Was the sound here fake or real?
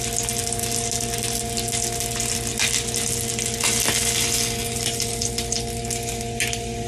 real